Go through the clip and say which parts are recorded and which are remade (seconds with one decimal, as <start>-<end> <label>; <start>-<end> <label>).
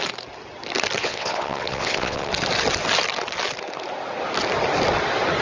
0.0-1.0 recorded; 1.0-2.3 remade; 2.3-5.4 recorded